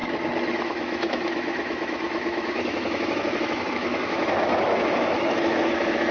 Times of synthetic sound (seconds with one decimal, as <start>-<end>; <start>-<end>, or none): 0.0-6.1